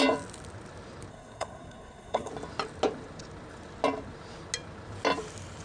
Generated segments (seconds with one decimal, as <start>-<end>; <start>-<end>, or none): 1.1-2.3